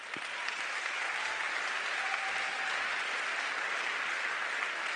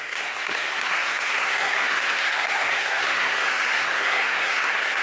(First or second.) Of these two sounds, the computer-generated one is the second